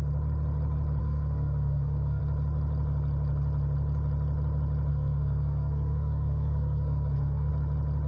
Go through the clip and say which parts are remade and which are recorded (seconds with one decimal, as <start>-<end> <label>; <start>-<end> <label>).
0.0-1.0 recorded; 1.0-2.2 remade; 2.2-4.9 recorded; 4.9-7.5 remade; 7.5-8.1 recorded